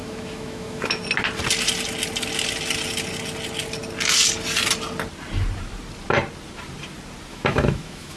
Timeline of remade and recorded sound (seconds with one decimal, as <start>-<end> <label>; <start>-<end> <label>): 0.0-1.0 remade; 1.0-7.3 recorded; 7.3-8.2 remade